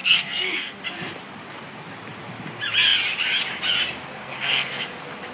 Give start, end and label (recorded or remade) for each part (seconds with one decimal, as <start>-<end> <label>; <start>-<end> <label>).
0.0-0.8 remade; 0.8-4.2 recorded; 4.2-4.8 remade; 4.8-5.3 recorded